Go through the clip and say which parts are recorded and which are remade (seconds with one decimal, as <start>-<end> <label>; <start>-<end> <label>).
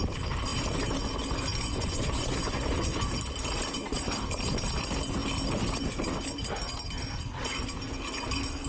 0.0-1.5 recorded; 1.5-3.1 remade; 3.1-8.7 recorded